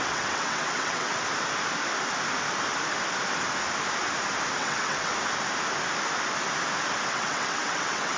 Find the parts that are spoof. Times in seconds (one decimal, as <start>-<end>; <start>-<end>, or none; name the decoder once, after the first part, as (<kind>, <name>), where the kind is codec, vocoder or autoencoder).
0.0-1.1 (vocoder, WaveNeXt); 4.6-5.1; 7.1-8.2